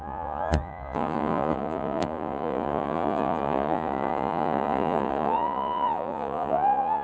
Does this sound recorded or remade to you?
remade